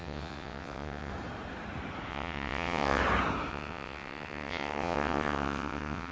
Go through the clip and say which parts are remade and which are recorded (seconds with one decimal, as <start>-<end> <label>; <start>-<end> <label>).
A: 0.0-1.1 remade; 1.1-2.1 recorded; 2.1-3.0 remade; 3.0-3.5 recorded; 3.5-6.1 remade